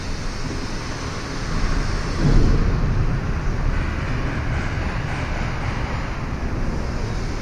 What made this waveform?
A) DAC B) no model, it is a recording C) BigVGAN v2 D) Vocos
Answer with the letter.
B